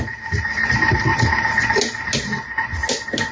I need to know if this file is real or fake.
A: real